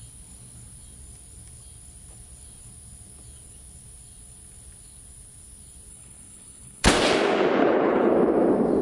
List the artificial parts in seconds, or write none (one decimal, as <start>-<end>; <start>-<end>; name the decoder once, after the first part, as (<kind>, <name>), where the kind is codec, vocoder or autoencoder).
5.9-6.9 (codec, HILCodec); 7.6-8.1